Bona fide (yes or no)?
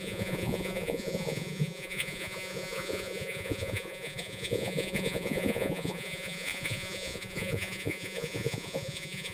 no